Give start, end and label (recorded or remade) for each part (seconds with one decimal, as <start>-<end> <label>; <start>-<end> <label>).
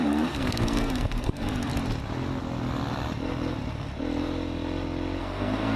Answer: 0.0-1.7 remade; 1.7-5.2 recorded; 5.2-5.8 remade